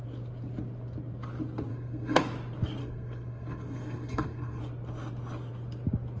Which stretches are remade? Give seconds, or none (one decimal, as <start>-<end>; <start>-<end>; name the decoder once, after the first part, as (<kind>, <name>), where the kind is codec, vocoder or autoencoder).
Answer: 1.7-2.2 (codec, SNAC); 2.8-4.6